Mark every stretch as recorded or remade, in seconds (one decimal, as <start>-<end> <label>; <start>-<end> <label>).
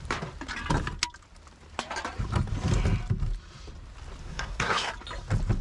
0.0-4.2 recorded; 4.2-4.9 remade; 4.9-5.6 recorded